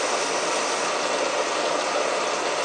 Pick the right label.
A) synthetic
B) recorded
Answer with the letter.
B